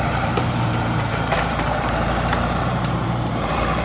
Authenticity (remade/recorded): remade